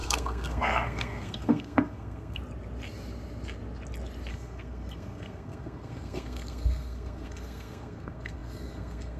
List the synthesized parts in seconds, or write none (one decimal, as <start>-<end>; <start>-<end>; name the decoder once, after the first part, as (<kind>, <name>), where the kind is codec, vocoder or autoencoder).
0.0-2.4 (codec, SNAC); 4.3-9.2